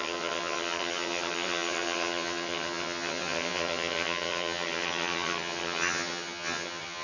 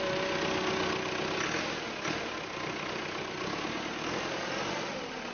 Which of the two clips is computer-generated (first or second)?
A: first